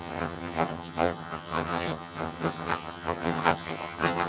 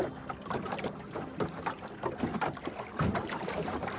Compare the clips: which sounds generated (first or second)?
first